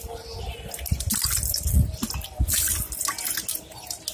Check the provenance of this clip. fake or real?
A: real